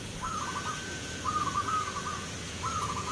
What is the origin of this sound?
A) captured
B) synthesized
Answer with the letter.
B